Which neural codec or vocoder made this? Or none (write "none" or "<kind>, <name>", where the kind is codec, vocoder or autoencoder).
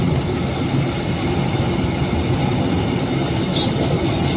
none